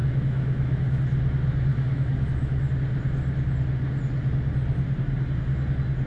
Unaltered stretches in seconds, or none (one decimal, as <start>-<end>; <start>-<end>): 1.0-1.7; 2.7-6.1